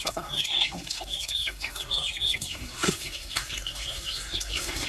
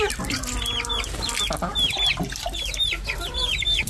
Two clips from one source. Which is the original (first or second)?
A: second